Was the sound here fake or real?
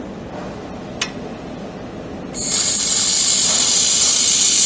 real